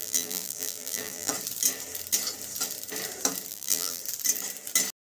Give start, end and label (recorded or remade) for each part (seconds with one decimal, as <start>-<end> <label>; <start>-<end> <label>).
0.0-1.3 remade; 1.3-3.5 recorded; 3.5-4.0 remade; 4.0-5.0 recorded